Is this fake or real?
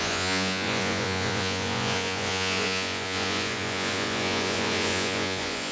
fake